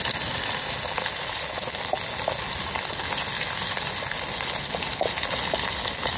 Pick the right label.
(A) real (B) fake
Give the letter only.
A